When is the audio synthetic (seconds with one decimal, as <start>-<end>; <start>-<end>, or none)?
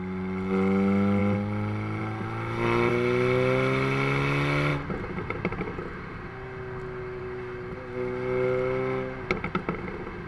none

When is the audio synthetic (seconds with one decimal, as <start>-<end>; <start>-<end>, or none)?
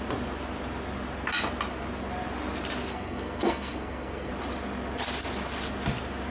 2.9-4.3